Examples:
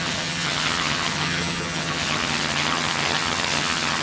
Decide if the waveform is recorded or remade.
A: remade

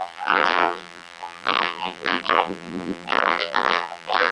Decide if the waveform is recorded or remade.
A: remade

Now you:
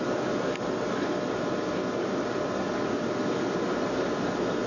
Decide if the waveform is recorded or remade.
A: recorded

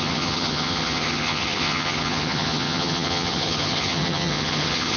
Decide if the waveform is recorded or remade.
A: remade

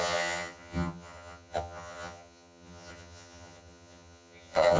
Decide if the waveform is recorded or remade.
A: remade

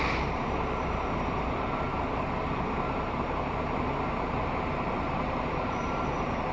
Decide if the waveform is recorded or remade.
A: remade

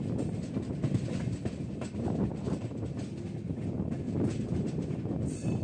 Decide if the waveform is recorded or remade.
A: recorded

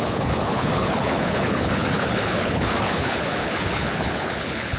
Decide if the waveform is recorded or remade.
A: remade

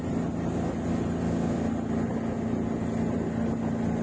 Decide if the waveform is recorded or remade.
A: recorded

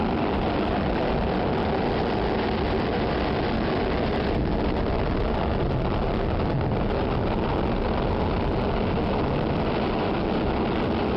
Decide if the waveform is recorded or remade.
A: recorded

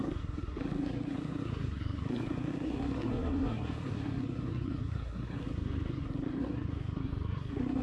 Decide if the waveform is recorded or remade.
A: remade